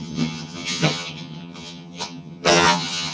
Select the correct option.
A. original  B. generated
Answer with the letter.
B